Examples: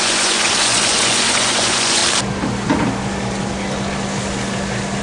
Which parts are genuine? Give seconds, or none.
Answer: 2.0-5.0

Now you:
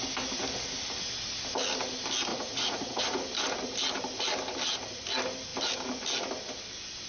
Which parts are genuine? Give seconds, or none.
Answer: 0.0-2.3; 3.2-7.1

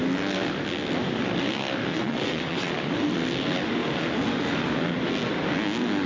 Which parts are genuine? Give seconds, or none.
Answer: 0.0-1.9; 2.7-6.1

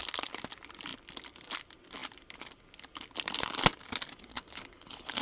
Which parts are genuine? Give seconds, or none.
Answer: 0.0-4.3

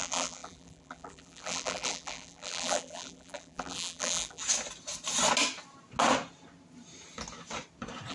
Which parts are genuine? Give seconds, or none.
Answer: 4.4-8.1

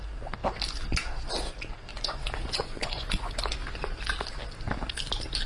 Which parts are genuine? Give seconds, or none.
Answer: 0.0-1.9; 3.4-5.5

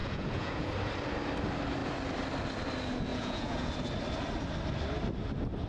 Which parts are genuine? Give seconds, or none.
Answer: 0.7-3.1; 3.7-5.7

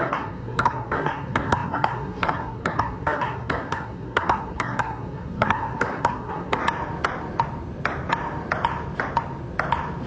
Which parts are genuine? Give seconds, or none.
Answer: 6.6-10.1